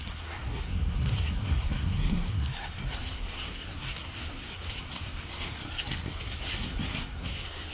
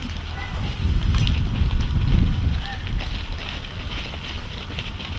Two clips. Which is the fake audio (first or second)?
first